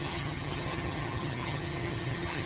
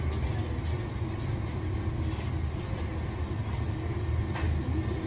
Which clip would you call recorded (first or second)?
second